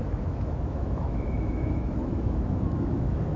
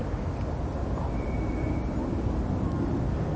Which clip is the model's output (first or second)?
first